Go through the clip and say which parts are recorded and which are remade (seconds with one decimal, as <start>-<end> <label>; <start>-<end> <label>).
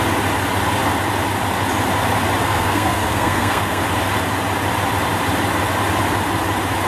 0.0-2.4 recorded; 2.4-3.8 remade; 3.8-6.9 recorded